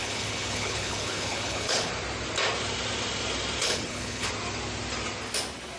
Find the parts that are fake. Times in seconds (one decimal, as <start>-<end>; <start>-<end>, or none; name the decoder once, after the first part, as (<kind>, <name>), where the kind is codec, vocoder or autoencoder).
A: 0.0-1.9 (codec, HILCodec); 3.6-4.3